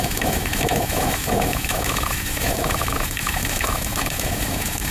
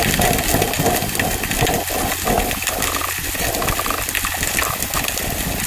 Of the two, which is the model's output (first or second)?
first